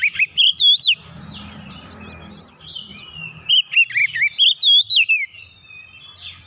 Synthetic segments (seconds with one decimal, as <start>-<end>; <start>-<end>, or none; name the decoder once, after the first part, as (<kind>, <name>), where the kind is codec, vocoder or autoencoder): 0.0-2.9 (vocoder, BigVGAN v2); 3.5-4.0; 5.1-6.5